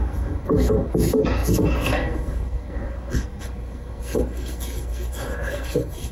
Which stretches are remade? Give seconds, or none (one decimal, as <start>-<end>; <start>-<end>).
0.0-6.1